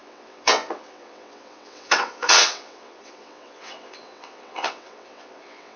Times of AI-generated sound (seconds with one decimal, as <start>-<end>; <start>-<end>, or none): 0.0-5.8